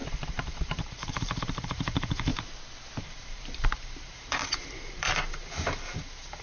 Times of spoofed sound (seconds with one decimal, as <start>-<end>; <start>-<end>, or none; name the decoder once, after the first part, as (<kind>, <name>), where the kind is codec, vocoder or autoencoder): 0.0-2.3 (vocoder, BigVGAN v2); 3.0-6.4